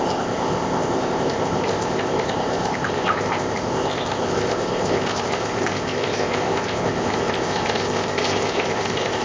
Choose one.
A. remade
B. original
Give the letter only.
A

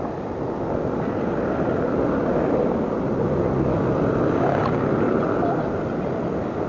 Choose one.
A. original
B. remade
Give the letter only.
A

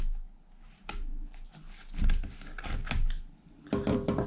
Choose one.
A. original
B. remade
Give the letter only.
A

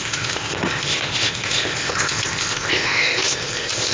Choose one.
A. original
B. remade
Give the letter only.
B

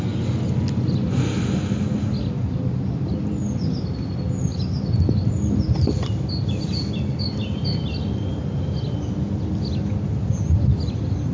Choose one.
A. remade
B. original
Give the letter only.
B